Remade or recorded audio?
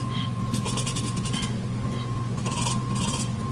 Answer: remade